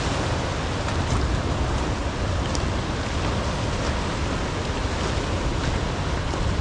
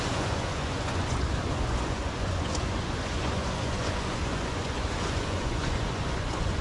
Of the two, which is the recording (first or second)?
first